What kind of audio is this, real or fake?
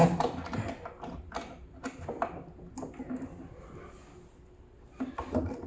real